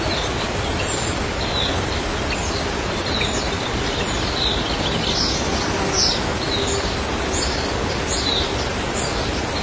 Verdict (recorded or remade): recorded